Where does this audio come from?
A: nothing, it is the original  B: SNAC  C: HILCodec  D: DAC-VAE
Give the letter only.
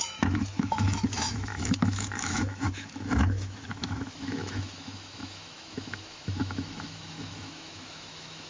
D